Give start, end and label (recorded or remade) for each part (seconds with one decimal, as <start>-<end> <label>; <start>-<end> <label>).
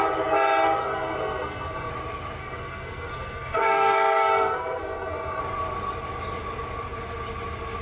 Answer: 0.0-0.8 recorded; 0.8-1.9 remade; 1.9-2.4 recorded; 2.4-5.4 remade; 5.4-7.8 recorded